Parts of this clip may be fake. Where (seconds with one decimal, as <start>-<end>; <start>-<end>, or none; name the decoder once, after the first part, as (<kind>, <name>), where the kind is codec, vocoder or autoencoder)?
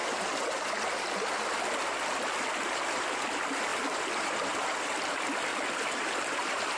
3.7-4.8 (vocoder, BigVGAN v2); 5.5-6.3